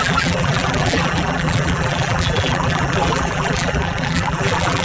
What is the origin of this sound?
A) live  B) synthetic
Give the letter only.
B